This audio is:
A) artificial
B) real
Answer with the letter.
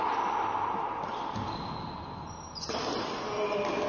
B